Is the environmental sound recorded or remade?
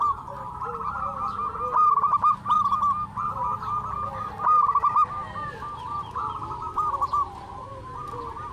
recorded